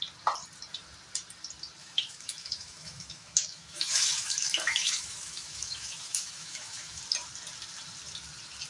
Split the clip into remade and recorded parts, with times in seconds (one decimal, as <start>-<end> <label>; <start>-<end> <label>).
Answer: 0.0-1.8 recorded; 1.8-7.0 remade; 7.0-8.7 recorded